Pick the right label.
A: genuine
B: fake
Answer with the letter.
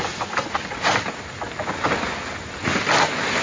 A